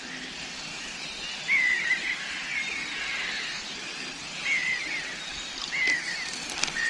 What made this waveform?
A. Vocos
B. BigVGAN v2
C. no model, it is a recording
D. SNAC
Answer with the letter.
C